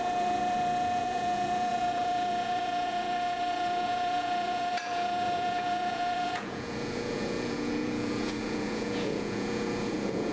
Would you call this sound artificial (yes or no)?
yes